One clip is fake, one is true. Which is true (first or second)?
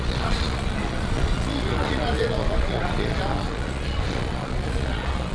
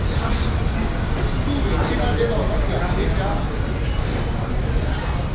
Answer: second